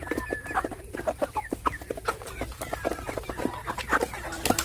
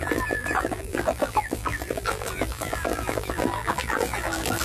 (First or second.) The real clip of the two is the first